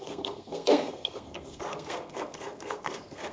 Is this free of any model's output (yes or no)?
no